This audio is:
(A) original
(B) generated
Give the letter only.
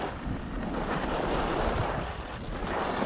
A